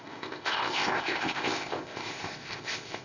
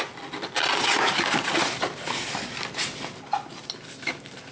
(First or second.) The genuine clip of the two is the second